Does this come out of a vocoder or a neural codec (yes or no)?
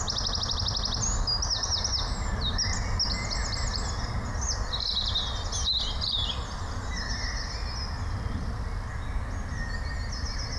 no